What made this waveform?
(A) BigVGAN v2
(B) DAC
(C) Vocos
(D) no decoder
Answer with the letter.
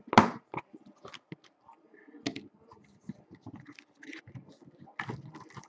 D